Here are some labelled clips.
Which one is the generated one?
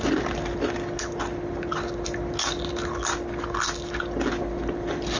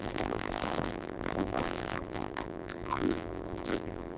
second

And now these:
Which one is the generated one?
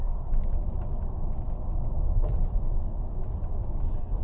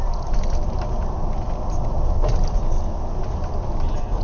first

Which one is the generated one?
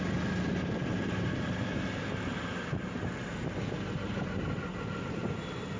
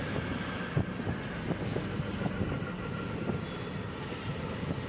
second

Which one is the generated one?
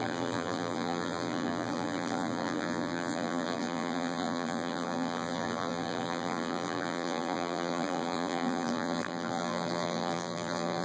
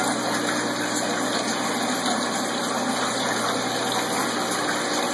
first